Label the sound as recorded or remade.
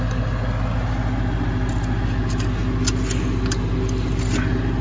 recorded